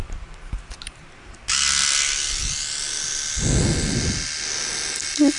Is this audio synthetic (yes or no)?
no